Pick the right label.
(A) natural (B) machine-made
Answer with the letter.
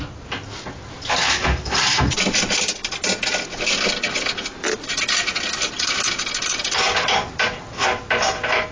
A